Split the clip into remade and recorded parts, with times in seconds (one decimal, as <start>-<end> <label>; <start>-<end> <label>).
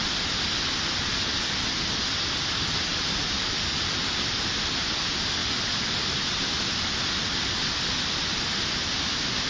0.0-9.5 recorded